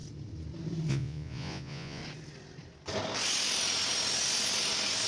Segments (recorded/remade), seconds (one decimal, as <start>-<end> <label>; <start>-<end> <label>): 0.0-0.9 recorded; 0.9-2.0 remade; 2.0-5.1 recorded